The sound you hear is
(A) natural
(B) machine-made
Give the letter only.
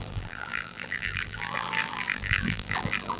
B